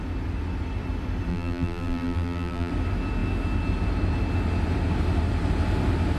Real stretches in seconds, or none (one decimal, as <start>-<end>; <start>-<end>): 0.0-1.3; 2.7-6.2